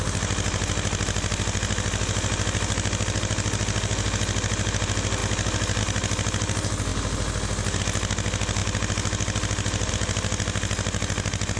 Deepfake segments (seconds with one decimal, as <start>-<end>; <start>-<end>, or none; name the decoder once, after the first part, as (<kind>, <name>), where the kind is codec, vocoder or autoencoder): none